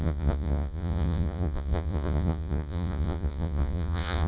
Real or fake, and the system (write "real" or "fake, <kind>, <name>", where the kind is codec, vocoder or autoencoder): fake, vocoder, Vocos